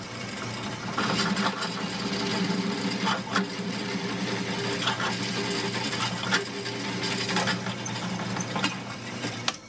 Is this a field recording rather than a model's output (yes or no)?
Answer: yes